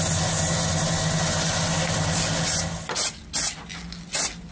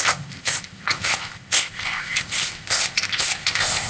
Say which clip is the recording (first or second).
first